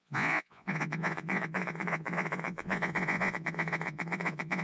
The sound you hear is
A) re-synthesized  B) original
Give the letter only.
A